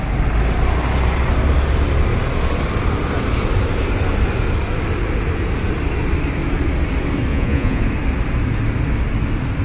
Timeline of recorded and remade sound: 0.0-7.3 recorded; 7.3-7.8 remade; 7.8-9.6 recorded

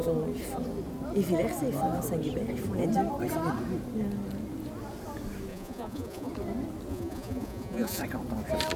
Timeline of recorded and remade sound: 0.0-5.5 recorded; 5.5-6.3 remade; 6.3-6.9 recorded; 6.9-8.0 remade; 8.0-8.8 recorded

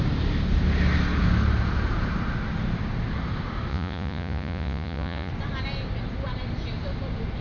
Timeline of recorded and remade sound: 0.0-3.7 recorded; 3.7-5.3 remade; 5.3-7.4 recorded

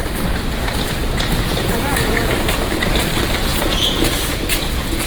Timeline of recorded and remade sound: 0.0-1.5 recorded; 1.5-2.3 remade; 2.3-3.5 recorded; 3.5-5.1 remade

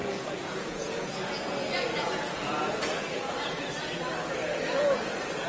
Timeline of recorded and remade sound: 0.0-3.3 remade; 3.3-4.4 recorded; 4.4-5.5 remade

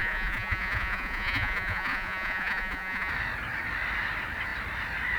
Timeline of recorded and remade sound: 0.0-3.1 remade; 3.1-5.2 recorded

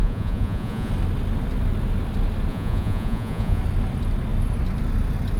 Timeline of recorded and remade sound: 0.0-0.9 remade; 0.9-2.5 recorded; 2.5-3.6 remade; 3.6-5.4 recorded

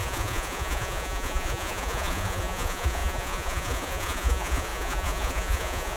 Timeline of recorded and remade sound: 0.0-6.0 remade